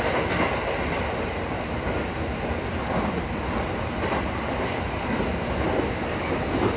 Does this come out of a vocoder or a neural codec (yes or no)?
no